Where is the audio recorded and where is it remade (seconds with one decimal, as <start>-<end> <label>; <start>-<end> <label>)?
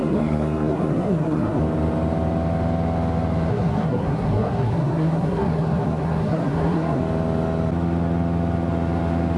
0.0-1.6 remade; 1.6-3.5 recorded; 3.5-7.0 remade; 7.0-9.4 recorded